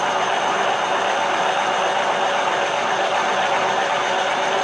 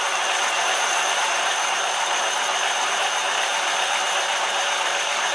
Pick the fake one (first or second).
second